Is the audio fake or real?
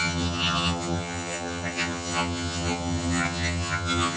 fake